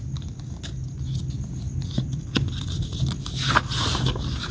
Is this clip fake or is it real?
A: real